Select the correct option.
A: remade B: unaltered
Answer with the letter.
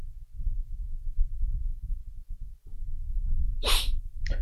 B